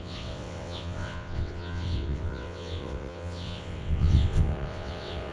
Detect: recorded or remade remade